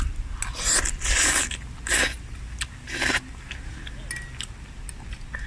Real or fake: real